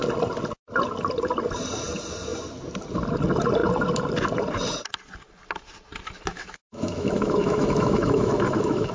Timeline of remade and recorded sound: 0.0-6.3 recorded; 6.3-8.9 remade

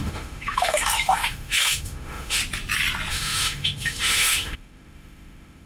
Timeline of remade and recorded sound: 0.0-2.4 remade; 2.4-3.1 recorded; 3.1-5.7 remade

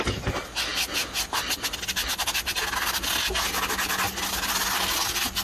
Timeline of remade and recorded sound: 0.0-5.4 recorded